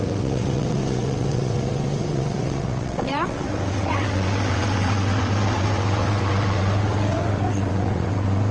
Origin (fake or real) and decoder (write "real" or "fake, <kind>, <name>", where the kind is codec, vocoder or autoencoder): fake, vocoder, WaveNeXt